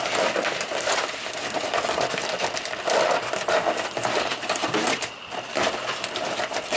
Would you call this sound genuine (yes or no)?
no